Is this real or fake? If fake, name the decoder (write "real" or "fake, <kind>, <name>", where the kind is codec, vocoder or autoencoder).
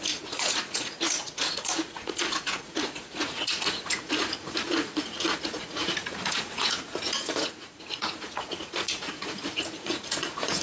fake, vocoder, Vocos